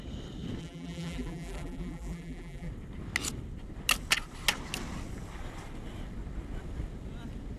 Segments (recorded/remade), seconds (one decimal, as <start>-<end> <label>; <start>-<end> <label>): 0.0-0.6 recorded; 0.6-2.7 remade; 2.7-7.6 recorded